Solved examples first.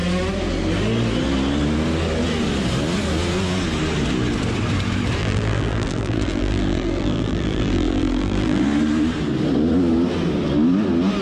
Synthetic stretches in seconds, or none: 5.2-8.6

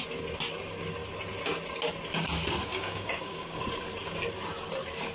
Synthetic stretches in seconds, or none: 2.7-3.6

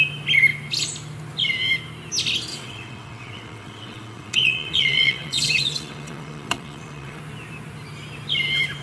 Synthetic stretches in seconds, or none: 2.5-7.2

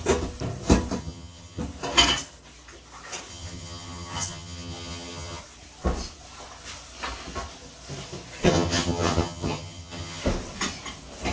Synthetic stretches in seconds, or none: 1.0-1.6; 3.3-5.4; 8.4-10.2

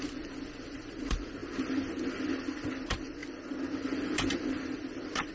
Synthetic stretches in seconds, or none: none